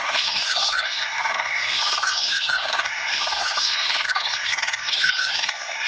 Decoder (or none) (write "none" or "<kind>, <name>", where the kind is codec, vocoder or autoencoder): codec, SNAC